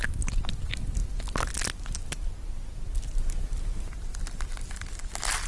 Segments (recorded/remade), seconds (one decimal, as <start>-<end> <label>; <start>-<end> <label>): 0.0-5.5 recorded